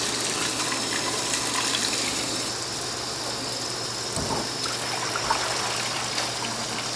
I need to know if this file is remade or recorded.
recorded